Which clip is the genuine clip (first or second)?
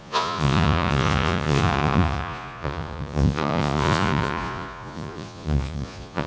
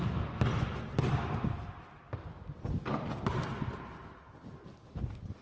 second